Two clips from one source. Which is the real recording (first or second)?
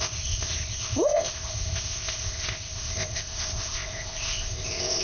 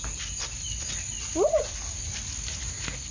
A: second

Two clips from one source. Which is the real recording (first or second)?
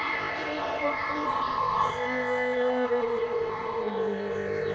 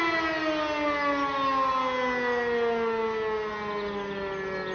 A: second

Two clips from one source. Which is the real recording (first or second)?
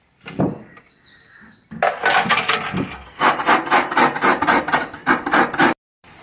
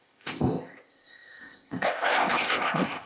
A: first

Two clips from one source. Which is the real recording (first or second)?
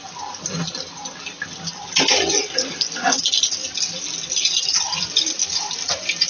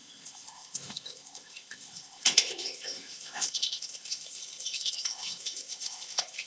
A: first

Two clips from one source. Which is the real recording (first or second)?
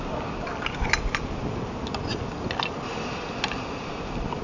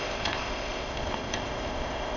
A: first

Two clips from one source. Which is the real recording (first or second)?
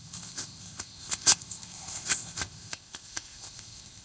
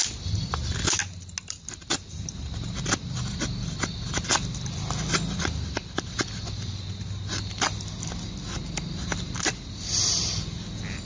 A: second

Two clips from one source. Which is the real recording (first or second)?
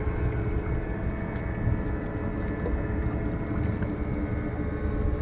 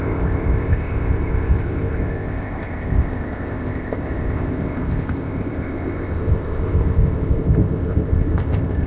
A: first